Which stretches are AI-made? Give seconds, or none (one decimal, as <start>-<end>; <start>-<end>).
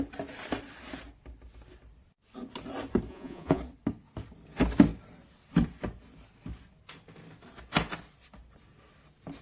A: 3.1-3.6